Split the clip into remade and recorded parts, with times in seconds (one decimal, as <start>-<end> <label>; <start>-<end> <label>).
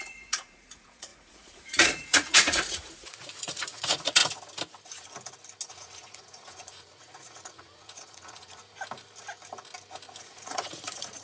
0.0-4.2 remade; 4.2-5.7 recorded; 5.7-8.6 remade; 8.6-10.2 recorded; 10.2-11.2 remade